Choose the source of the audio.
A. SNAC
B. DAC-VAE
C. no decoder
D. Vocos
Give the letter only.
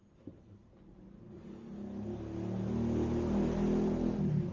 C